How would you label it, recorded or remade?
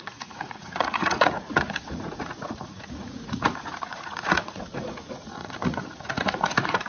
remade